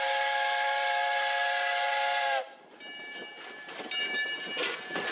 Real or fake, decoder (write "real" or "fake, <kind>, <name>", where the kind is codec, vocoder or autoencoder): real